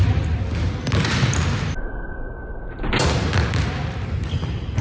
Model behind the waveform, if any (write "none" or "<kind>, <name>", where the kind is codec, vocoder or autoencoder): none